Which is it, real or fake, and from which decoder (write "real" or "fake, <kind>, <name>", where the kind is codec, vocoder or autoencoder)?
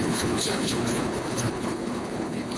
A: fake, codec, HILCodec